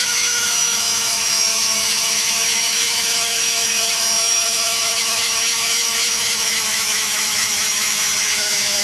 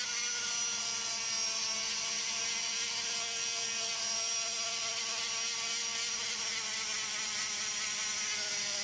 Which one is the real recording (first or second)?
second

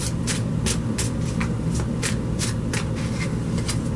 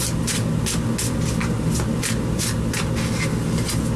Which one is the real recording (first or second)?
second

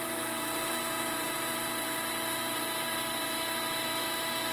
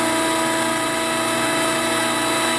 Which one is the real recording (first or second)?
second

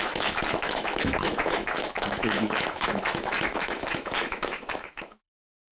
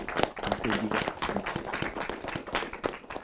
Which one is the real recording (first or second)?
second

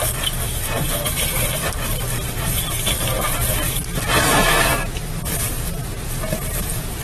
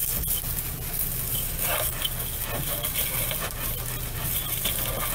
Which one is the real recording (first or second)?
second